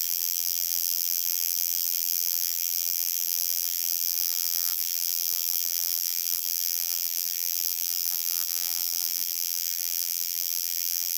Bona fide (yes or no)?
no